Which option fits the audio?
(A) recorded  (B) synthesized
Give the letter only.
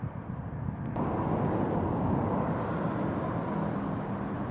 A